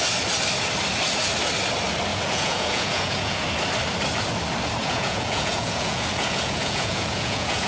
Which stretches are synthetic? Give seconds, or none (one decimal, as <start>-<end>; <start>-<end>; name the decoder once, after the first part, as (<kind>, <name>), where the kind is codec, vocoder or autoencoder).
2.1-3.4 (vocoder, Vocos); 4.8-7.7